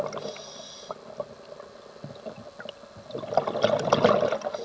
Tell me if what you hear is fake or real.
real